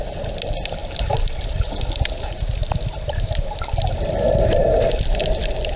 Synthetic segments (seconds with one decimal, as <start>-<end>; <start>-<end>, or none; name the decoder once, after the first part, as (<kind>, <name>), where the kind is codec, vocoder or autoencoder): 0.8-1.8 (vocoder, BigVGAN v2); 2.6-3.6